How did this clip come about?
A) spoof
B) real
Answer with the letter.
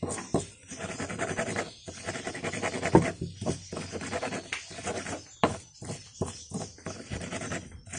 B